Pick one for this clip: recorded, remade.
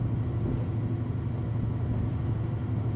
recorded